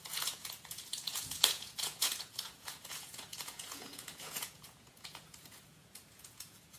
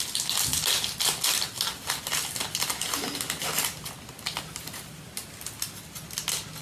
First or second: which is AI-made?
first